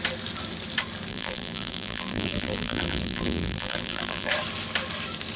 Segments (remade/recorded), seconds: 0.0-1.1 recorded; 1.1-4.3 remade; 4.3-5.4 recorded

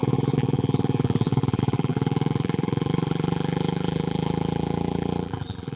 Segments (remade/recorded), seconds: 0.0-5.8 remade

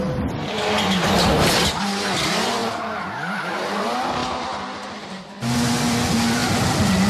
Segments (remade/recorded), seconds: 0.0-4.2 recorded; 4.2-5.1 remade; 5.1-7.1 recorded

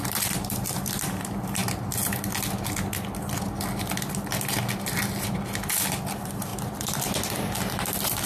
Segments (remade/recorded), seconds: 0.0-1.6 remade; 1.6-5.9 recorded; 5.9-8.3 remade

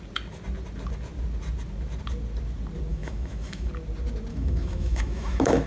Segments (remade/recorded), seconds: 0.0-2.9 recorded; 2.9-3.7 remade; 3.7-4.3 recorded; 4.3-5.7 remade